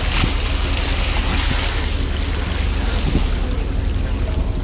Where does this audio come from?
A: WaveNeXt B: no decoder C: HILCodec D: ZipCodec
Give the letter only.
B